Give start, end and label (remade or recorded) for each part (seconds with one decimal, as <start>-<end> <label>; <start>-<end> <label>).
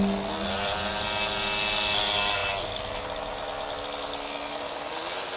0.0-5.4 recorded